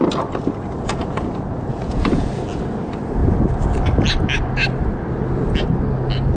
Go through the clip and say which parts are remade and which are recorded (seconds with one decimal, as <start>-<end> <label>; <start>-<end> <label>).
0.0-1.7 recorded; 1.7-2.3 remade; 2.3-6.4 recorded